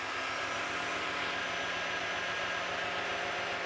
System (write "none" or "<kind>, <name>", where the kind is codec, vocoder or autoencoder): none